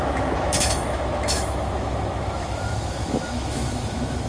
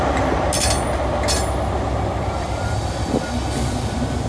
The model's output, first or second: first